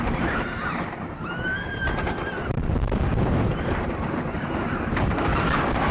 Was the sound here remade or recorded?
remade